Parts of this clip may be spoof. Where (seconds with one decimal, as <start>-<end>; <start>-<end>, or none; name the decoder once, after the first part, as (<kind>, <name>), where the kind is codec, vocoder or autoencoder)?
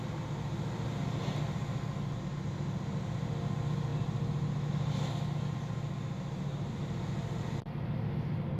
none